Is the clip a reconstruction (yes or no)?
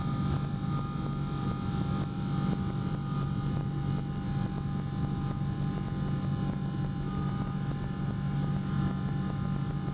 no